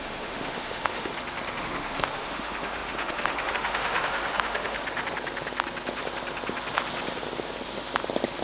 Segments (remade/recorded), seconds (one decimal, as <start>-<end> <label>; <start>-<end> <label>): 0.0-1.1 remade; 1.1-1.6 recorded; 1.6-4.8 remade; 4.8-8.4 recorded